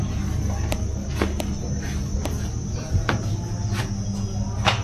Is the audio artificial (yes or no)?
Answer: no